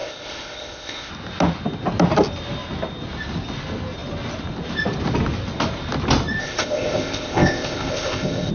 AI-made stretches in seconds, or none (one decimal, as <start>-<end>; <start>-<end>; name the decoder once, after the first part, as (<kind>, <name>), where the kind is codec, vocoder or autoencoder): 0.0-1.1 (codec, ZipCodec); 6.4-8.5